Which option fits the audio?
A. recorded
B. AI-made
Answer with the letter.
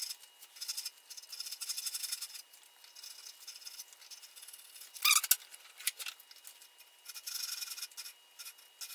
A